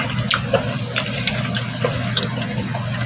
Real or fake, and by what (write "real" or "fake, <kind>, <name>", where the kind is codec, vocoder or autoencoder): real